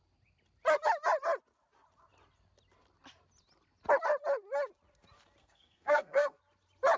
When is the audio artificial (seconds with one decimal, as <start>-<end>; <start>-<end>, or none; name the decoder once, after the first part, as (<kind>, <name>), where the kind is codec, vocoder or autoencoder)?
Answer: 5.4-6.4 (codec, SNAC)